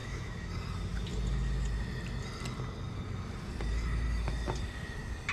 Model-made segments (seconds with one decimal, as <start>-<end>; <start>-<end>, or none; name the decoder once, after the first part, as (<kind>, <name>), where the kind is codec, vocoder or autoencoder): 0.0-0.5 (autoencoder, DAC-VAE)